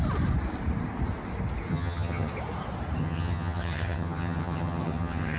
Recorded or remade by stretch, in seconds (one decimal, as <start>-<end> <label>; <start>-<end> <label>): 0.0-1.7 recorded; 1.7-2.3 remade; 2.3-3.0 recorded; 3.0-5.4 remade